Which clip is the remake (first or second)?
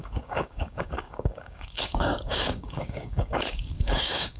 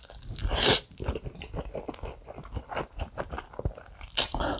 first